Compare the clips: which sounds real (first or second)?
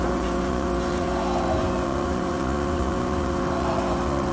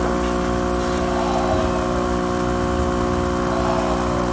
second